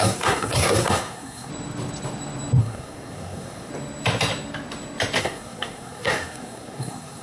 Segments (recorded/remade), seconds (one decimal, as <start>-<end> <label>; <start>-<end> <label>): 0.0-1.5 remade; 1.5-2.6 recorded; 2.6-3.7 remade; 3.7-5.2 recorded; 5.2-7.2 remade